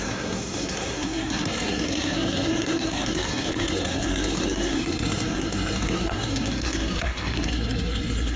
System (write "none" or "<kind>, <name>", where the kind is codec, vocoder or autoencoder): codec, SNAC